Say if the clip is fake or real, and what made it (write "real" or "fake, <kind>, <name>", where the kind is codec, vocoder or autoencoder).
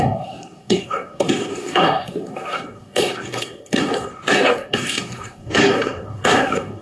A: fake, codec, SNAC